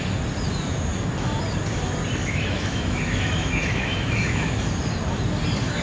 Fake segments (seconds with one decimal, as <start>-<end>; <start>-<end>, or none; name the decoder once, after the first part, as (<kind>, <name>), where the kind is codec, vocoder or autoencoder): 2.2-4.6 (autoencoder, DAC-VAE)